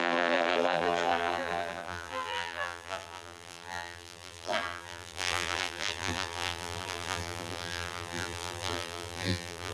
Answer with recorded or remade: remade